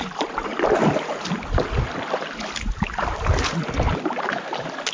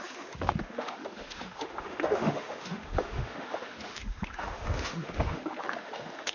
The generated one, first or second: second